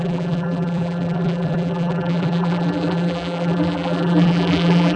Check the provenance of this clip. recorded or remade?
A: remade